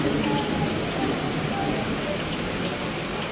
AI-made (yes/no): no